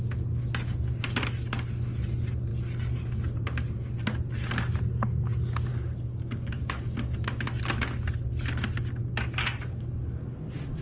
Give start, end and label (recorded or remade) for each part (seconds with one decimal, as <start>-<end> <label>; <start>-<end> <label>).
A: 0.0-5.7 recorded; 5.7-7.2 remade; 7.2-10.8 recorded